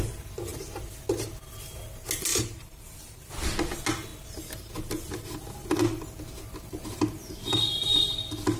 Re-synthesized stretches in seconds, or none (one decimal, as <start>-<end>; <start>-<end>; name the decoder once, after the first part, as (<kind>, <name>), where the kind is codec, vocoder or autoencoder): 2.3-3.3 (vocoder, BigVGAN v2); 4.1-4.7